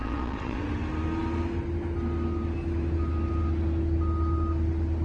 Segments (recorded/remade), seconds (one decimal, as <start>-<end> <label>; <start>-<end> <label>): 0.0-0.6 remade; 0.6-5.0 recorded